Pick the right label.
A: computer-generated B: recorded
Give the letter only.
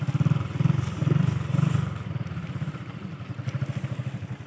B